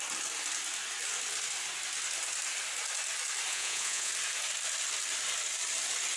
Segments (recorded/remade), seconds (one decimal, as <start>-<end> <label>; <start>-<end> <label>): 0.0-3.5 recorded; 3.5-4.1 remade; 4.1-6.2 recorded